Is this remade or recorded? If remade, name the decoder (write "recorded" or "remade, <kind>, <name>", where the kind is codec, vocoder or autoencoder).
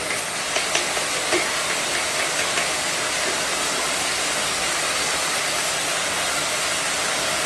recorded